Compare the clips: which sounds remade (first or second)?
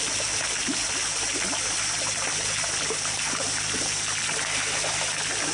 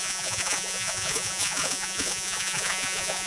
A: second